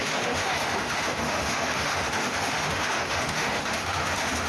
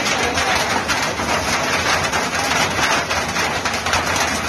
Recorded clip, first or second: second